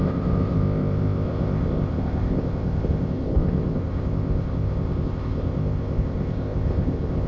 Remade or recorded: remade